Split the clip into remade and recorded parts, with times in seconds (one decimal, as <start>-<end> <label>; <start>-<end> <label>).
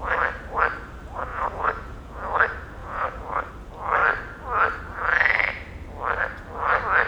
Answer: 0.0-1.3 recorded; 1.3-2.1 remade; 2.1-2.8 recorded; 2.8-3.5 remade; 3.5-7.1 recorded